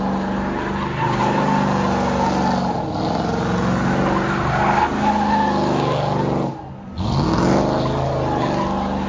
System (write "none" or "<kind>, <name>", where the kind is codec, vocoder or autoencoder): none